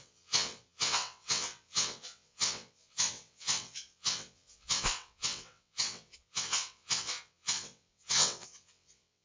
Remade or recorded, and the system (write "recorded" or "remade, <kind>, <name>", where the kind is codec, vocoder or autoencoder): remade, vocoder, WaveNeXt